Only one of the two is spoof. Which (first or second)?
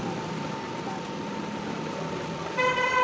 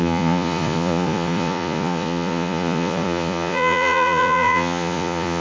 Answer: second